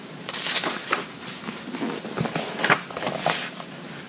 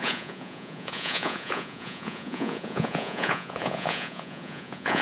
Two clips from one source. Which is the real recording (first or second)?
first